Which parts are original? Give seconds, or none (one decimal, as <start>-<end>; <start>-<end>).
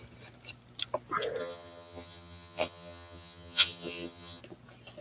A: 0.0-1.4; 4.4-5.0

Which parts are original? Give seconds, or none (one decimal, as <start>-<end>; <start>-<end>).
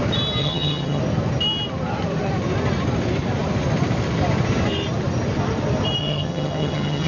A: 0.0-0.4; 1.0-6.0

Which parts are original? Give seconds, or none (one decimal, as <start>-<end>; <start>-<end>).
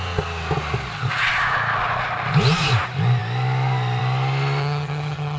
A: 0.0-4.6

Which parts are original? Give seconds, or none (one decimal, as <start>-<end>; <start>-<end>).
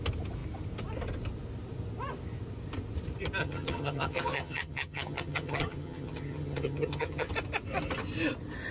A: 0.0-3.4; 7.3-8.7